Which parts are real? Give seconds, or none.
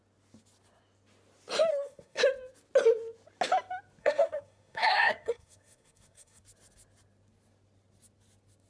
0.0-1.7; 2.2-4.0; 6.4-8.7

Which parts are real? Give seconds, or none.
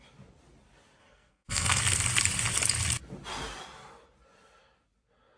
0.0-1.0; 1.8-5.4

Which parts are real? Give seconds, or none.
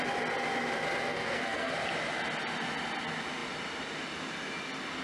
0.0-1.1; 1.7-5.0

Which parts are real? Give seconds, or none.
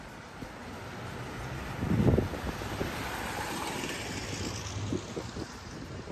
0.0-6.1